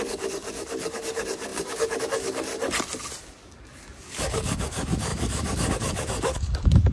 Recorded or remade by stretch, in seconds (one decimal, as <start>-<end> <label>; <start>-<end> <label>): 0.0-2.5 remade; 2.5-3.2 recorded; 3.2-6.9 remade